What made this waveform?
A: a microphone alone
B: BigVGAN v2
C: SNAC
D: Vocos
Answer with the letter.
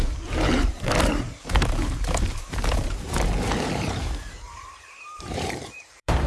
B